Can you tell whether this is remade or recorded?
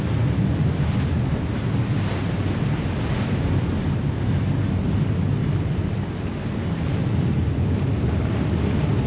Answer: recorded